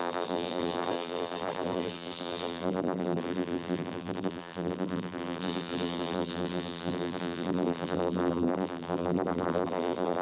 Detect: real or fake fake